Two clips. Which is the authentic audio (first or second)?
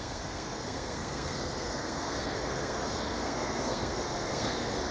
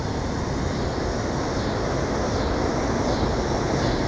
second